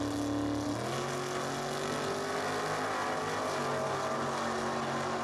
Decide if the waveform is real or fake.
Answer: real